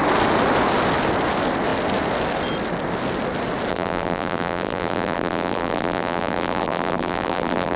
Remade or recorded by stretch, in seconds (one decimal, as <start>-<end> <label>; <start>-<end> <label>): 0.0-3.7 recorded; 3.7-7.8 remade